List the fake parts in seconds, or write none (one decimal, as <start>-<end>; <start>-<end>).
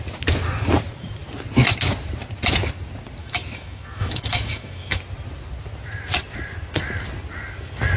3.2-5.0